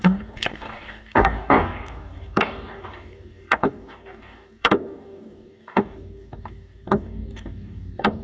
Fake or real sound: fake